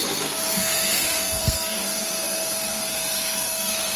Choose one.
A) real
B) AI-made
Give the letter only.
B